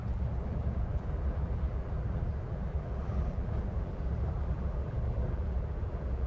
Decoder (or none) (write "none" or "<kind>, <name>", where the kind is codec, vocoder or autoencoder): vocoder, BigVGAN v2